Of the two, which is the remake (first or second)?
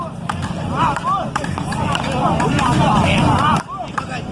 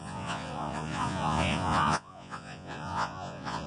second